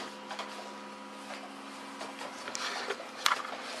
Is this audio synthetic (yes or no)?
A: no